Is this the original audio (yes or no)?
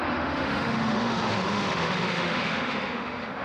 no